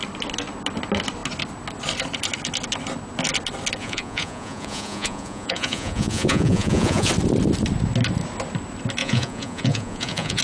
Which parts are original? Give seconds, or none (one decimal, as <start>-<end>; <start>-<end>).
0.0-3.8; 7.1-9.0